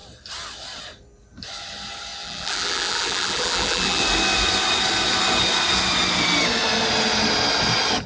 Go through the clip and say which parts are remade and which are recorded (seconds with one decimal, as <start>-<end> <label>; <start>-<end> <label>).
0.0-2.2 recorded; 2.2-4.0 remade; 4.0-8.1 recorded